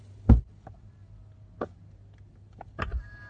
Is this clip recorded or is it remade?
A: recorded